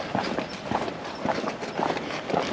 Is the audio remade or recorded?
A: recorded